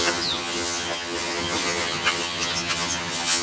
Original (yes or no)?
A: no